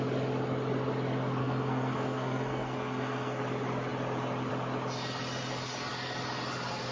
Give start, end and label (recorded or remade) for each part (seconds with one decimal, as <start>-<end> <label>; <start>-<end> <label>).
0.0-1.4 recorded; 1.4-3.4 remade; 3.4-6.9 recorded